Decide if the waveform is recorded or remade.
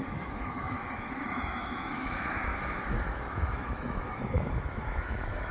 remade